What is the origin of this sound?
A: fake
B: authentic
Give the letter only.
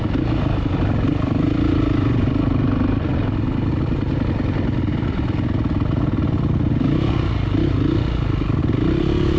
B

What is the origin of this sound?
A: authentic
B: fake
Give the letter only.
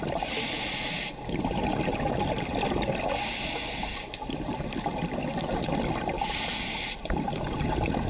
A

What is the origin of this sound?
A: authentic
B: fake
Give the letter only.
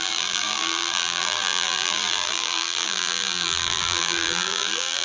B